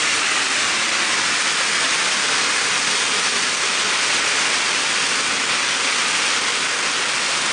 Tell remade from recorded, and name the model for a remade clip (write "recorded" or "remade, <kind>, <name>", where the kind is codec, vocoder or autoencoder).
recorded